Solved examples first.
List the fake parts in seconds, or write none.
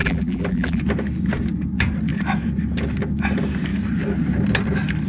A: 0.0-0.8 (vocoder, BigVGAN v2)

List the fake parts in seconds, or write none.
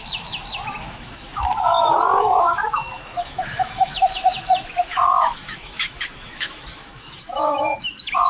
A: 0.0-8.3 (autoencoder, DAC-VAE)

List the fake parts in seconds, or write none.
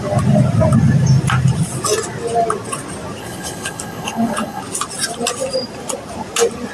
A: 3.2-4.6 (codec, HILCodec)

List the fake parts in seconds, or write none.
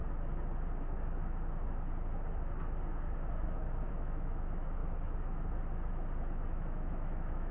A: 3.9-4.8 (autoencoder, DAC-VAE); 6.2-7.5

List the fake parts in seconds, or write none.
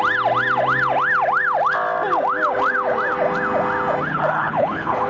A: 4.1-5.1 (codec, HILCodec)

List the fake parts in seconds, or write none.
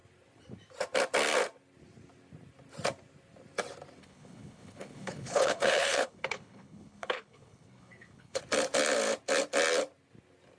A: 4.0-8.4 (codec, HILCodec)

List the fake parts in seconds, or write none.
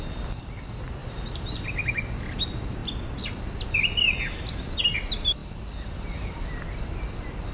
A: 1.0-1.6 (vocoder, BigVGAN v2); 5.4-6.8